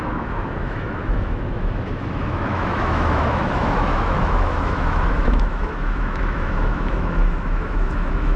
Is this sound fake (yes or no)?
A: yes